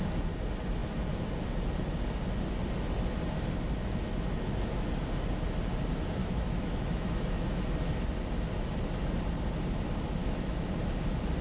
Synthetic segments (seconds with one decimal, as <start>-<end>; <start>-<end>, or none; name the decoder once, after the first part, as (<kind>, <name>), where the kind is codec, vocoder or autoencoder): 6.2-7.6 (autoencoder, DAC-VAE); 10.2-10.7